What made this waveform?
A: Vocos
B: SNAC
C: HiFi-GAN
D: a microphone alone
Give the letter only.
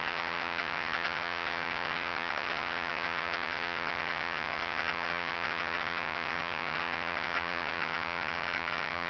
C